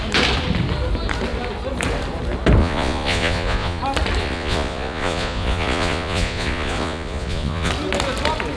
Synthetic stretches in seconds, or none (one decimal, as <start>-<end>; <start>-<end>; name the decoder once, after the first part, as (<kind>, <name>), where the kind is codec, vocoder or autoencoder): 2.6-3.8 (vocoder, Vocos); 4.2-7.7